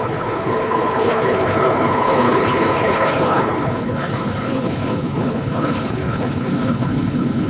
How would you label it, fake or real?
fake